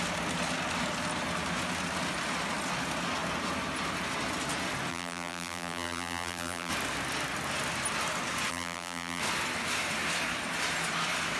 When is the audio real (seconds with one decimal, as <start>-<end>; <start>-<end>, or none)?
0.0-4.9; 6.7-8.5; 9.2-11.4